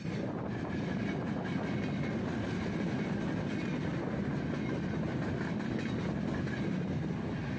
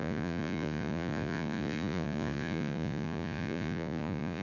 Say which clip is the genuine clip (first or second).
first